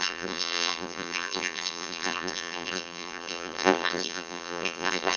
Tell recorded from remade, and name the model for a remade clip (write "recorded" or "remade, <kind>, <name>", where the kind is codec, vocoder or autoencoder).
remade, vocoder, BigVGAN v2